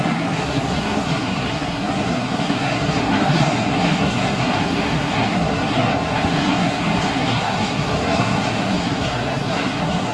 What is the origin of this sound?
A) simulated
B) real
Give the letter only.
A